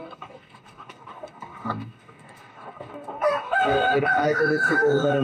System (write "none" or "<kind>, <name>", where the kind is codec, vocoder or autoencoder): codec, DAC